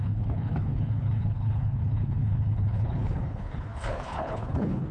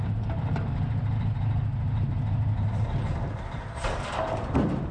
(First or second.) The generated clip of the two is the first